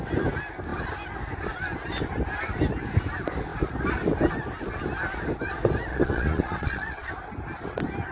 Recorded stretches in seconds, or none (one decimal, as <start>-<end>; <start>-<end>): 0.0-5.9; 7.1-8.1